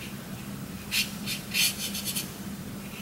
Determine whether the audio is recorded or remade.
recorded